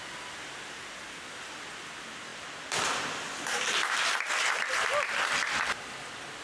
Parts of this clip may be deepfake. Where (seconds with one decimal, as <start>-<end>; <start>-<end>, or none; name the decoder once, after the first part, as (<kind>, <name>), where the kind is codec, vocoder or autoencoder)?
none